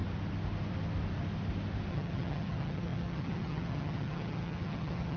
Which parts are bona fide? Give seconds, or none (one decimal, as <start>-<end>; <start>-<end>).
0.0-1.9